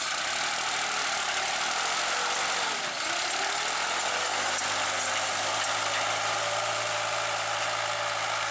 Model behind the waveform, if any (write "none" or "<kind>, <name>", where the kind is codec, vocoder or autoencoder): none